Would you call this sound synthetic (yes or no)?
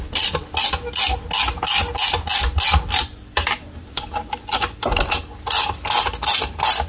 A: no